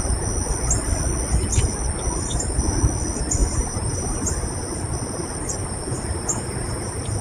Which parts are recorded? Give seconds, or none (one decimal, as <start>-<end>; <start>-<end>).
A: 0.0-3.4; 4.5-7.2